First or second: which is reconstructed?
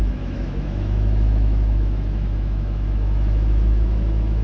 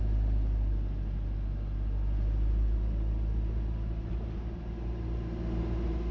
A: first